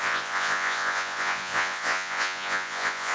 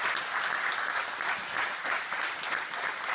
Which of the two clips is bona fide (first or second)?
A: second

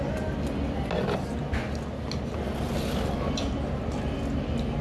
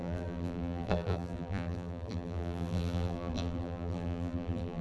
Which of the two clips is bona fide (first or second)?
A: first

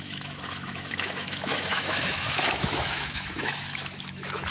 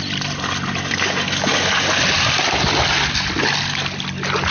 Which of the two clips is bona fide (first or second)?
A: second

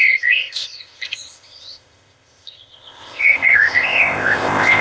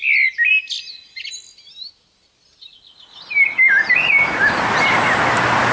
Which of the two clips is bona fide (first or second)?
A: second